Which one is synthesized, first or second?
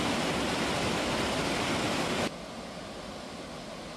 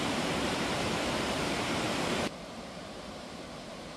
second